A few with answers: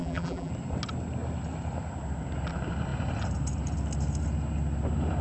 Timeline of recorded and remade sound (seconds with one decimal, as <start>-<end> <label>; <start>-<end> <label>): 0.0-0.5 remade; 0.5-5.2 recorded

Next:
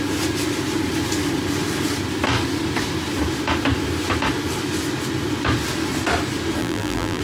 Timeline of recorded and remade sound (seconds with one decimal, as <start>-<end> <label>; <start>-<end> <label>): 0.0-6.6 recorded; 6.6-7.2 remade

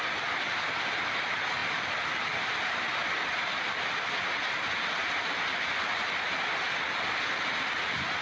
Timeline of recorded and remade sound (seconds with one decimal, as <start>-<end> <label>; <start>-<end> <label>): 0.0-8.2 recorded